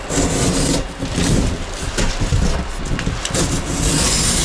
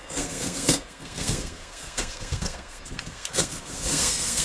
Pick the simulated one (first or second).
second